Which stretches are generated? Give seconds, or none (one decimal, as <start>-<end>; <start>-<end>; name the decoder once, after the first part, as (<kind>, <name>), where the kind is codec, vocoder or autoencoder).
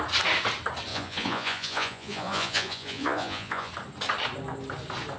0.9-3.7 (vocoder, Vocos)